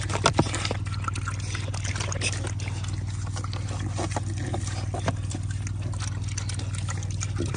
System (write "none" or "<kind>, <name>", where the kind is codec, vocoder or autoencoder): none